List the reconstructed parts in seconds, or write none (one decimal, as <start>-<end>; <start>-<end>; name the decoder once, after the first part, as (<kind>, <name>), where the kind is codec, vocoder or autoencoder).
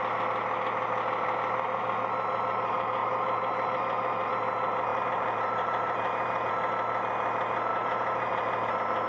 3.0-4.3 (vocoder, BigVGAN v2); 4.9-6.5; 7.7-8.7